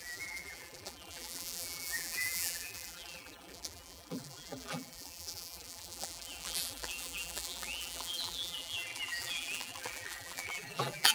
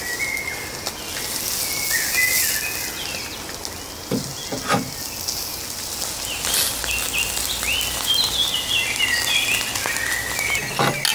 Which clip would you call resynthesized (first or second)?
first